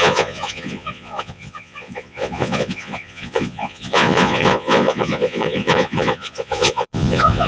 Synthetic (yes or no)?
yes